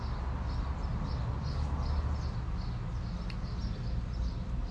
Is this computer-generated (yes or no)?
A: no